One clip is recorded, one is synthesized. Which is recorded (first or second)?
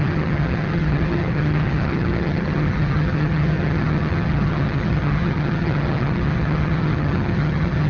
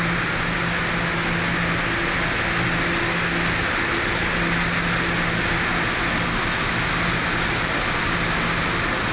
second